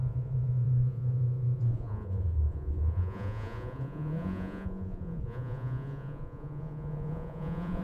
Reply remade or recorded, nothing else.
remade